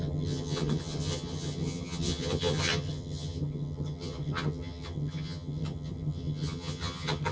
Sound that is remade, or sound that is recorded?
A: remade